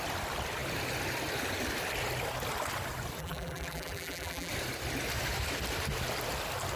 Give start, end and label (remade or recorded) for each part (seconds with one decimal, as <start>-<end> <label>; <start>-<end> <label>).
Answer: 0.0-3.2 recorded; 3.2-4.5 remade; 4.5-6.8 recorded